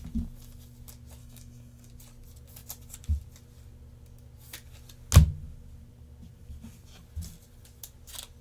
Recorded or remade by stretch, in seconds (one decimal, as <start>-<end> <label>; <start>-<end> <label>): 0.0-1.2 recorded; 1.2-1.9 remade; 1.9-8.4 recorded